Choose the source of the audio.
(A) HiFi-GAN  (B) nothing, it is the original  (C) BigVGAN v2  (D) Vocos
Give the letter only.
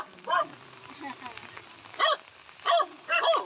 B